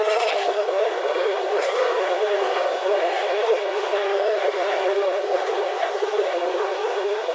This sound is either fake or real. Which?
fake